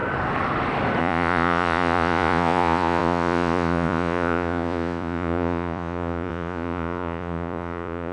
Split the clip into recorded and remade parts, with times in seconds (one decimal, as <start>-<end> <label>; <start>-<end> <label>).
0.0-1.0 recorded; 1.0-8.1 remade

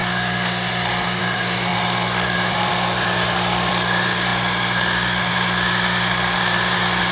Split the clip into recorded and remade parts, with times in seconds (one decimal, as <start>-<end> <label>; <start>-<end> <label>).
0.0-7.1 recorded

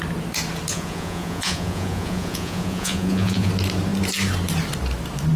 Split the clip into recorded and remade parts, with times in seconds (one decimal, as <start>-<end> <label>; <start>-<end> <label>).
0.0-0.7 recorded; 0.7-3.5 remade; 3.5-5.4 recorded

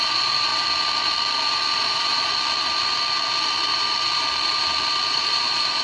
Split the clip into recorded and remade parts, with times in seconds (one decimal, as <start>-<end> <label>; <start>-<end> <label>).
0.0-0.5 remade; 0.5-1.8 recorded; 1.8-2.3 remade; 2.3-5.1 recorded; 5.1-5.8 remade